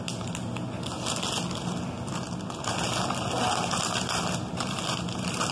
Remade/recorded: recorded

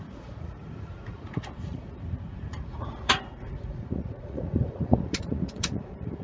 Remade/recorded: remade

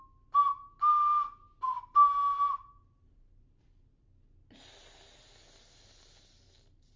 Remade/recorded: recorded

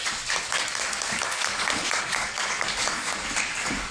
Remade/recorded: remade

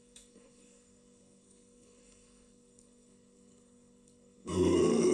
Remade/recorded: remade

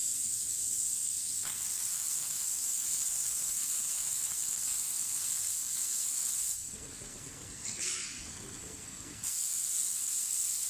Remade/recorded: remade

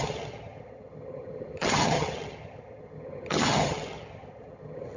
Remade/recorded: remade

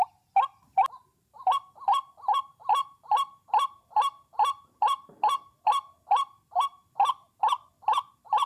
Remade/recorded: recorded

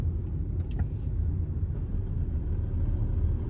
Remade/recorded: recorded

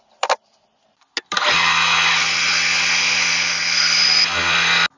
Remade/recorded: recorded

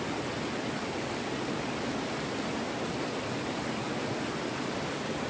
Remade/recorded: recorded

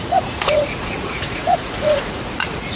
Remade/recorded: remade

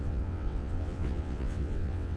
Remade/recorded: remade